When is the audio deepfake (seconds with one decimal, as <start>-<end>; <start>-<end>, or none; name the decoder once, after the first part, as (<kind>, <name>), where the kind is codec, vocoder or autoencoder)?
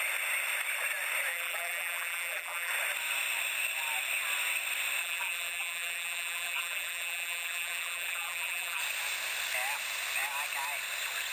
1.3-2.7 (vocoder, BigVGAN v2); 5.0-8.8